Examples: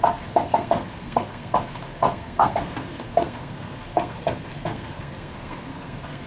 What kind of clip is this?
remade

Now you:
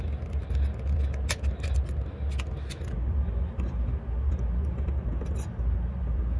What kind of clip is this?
recorded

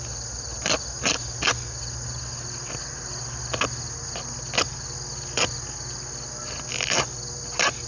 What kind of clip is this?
recorded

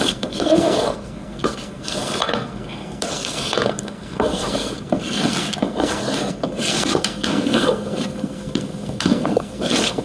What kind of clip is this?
remade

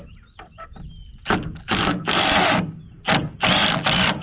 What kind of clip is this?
recorded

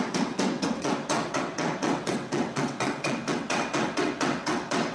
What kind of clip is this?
remade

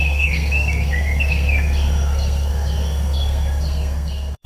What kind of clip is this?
remade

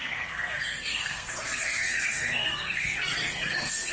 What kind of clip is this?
remade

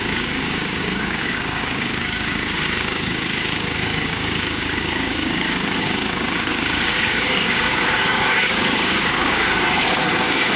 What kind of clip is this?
remade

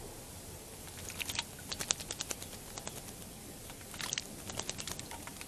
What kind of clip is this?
recorded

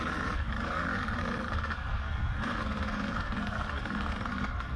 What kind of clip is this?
remade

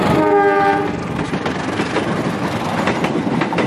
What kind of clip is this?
recorded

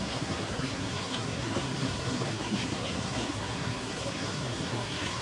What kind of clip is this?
remade